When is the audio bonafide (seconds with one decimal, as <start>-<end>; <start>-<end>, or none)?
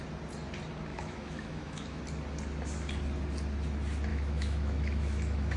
0.0-0.9; 2.0-4.1